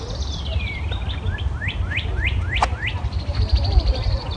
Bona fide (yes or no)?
yes